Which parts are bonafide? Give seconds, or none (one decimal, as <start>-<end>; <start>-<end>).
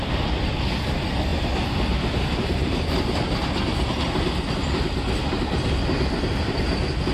0.0-7.1